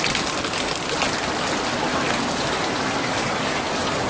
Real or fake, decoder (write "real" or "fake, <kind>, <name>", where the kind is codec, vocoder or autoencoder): real